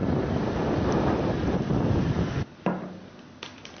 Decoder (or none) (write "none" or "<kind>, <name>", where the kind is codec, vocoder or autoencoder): none